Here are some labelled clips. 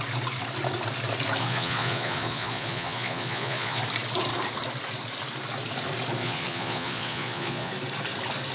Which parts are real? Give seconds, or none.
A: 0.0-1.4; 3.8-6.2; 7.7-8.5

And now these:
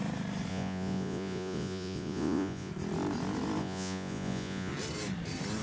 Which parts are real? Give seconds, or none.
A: 0.0-0.5; 2.7-3.6; 4.7-5.6